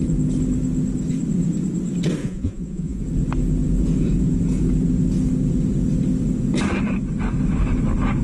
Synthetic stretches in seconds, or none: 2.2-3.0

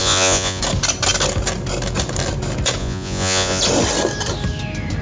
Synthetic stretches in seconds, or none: 0.0-0.6; 2.8-3.6

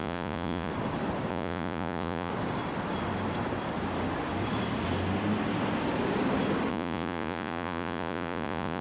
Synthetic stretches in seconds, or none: 0.0-0.7; 1.3-2.3; 6.7-8.8